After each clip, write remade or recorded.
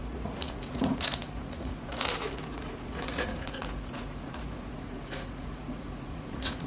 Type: remade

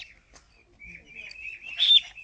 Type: recorded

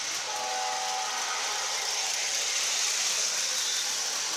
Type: recorded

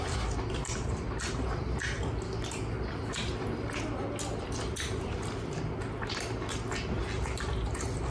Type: recorded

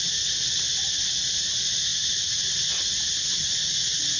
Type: recorded